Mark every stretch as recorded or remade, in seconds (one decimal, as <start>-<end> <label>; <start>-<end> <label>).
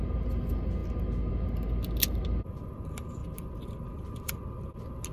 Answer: 0.0-5.1 recorded